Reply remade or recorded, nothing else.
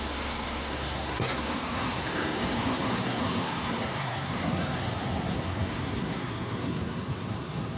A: remade